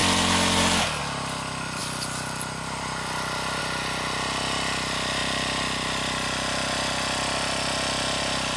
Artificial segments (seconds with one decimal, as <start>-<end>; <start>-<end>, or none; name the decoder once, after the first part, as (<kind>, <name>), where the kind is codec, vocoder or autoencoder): none